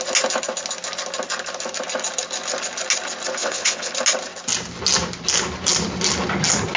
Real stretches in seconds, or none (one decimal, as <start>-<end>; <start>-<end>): 0.0-3.4; 3.9-6.8